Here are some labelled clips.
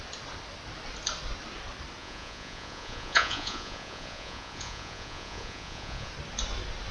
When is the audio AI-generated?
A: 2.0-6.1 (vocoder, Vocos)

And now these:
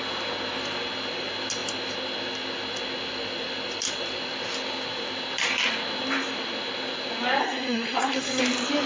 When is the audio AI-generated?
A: 7.4-8.4 (codec, SNAC)

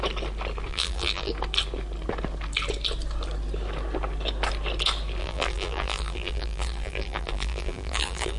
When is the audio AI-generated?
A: 0.7-1.3 (vocoder, BigVGAN v2); 5.2-8.4